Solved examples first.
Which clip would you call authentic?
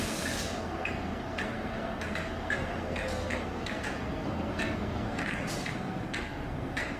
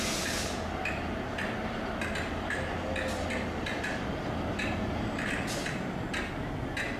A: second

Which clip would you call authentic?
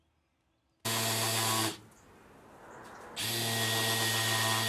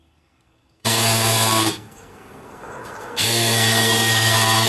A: first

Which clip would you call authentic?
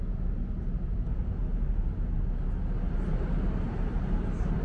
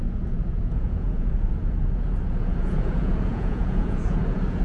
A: first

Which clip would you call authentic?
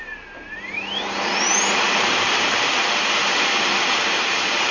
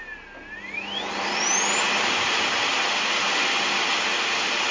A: second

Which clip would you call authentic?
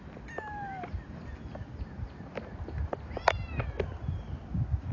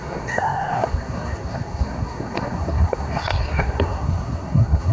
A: first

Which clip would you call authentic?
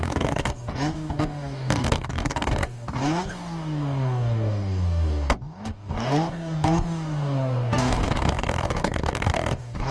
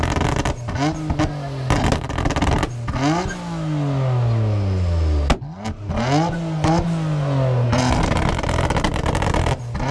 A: second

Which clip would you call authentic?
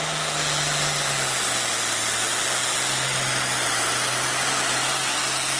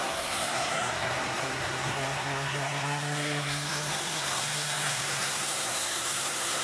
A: first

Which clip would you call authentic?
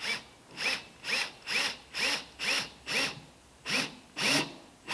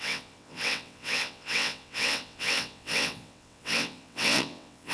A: first